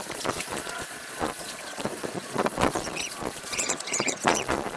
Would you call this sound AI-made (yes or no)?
yes